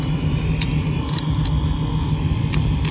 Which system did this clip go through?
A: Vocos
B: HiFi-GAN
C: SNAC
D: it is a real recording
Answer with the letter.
D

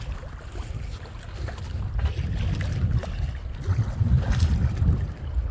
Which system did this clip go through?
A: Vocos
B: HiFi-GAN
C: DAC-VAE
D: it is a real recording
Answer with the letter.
D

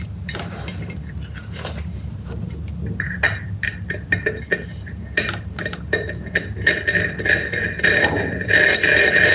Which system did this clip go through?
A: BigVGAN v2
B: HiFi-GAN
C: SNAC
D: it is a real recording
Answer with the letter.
D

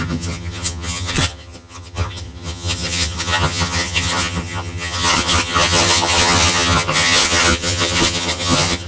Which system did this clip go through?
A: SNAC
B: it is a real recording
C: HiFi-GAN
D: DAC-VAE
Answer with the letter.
C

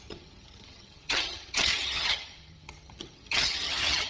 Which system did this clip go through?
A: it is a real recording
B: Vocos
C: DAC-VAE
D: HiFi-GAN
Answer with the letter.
D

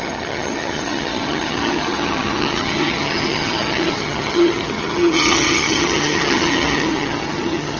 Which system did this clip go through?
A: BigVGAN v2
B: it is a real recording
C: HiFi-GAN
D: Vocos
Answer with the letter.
C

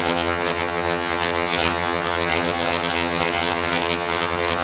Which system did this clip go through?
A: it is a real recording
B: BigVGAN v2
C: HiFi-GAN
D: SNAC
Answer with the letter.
C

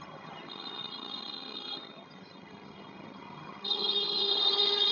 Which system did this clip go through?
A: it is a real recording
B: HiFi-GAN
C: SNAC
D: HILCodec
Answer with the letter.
B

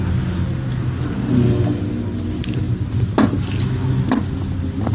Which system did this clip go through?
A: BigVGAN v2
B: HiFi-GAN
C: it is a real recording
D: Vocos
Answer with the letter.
C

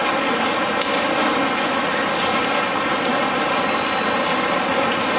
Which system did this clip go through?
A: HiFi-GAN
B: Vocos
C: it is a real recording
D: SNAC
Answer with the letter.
C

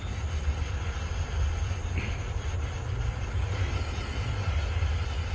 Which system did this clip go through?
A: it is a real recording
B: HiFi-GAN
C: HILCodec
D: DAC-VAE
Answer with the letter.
A